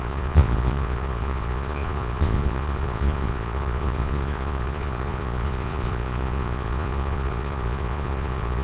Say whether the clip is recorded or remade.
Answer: remade